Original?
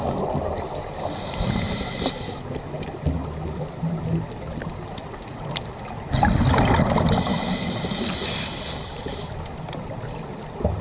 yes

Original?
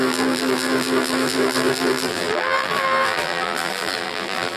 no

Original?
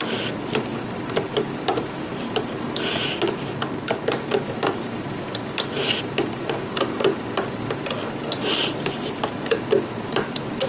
yes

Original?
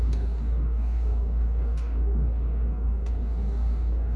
no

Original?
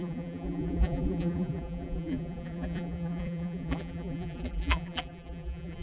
no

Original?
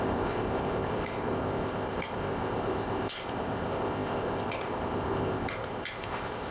no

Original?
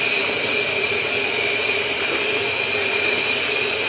yes